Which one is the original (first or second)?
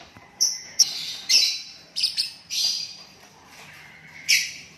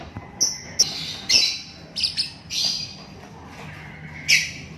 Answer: second